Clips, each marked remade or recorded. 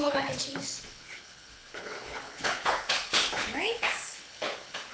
remade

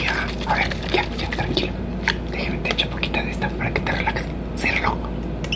recorded